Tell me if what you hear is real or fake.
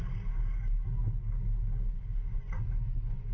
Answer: real